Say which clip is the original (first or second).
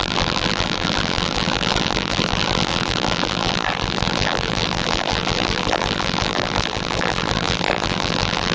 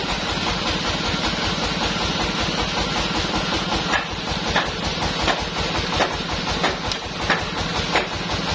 second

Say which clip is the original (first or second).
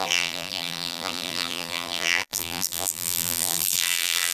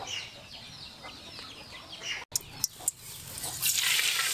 second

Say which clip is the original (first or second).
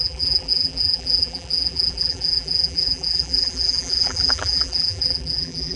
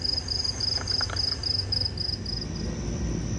second